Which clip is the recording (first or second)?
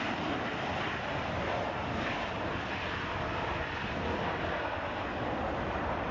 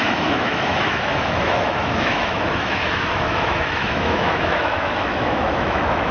first